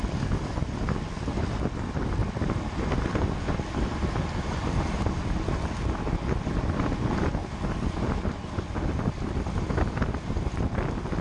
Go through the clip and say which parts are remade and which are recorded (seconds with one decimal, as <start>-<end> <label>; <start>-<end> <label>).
0.0-2.2 remade; 2.2-4.4 recorded; 4.4-11.2 remade